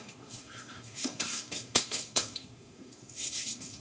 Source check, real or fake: fake